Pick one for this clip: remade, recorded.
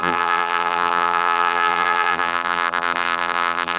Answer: remade